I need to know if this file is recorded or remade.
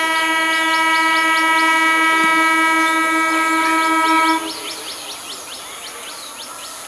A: recorded